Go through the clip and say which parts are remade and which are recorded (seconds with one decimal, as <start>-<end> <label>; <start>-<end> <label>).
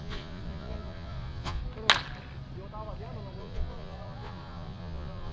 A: 0.0-1.6 remade; 1.6-3.4 recorded; 3.4-5.3 remade